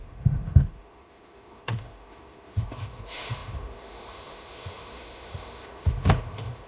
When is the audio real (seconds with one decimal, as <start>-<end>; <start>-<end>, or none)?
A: none